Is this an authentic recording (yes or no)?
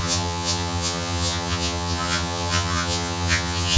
no